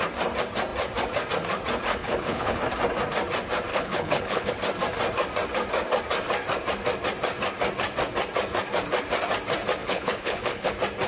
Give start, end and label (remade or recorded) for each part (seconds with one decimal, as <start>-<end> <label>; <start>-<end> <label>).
0.0-1.9 recorded; 1.9-2.6 remade; 2.6-3.7 recorded; 3.7-4.5 remade; 4.5-9.8 recorded; 9.8-10.7 remade; 10.7-11.1 recorded